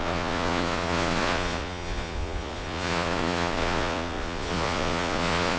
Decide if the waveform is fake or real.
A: fake